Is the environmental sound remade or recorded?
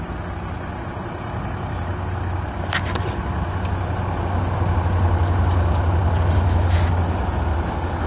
recorded